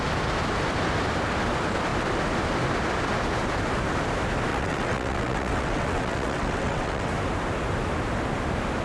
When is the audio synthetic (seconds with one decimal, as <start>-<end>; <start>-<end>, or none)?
4.5-7.1